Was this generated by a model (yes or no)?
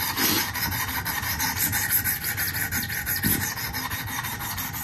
no